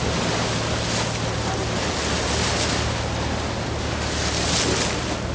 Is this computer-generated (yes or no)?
no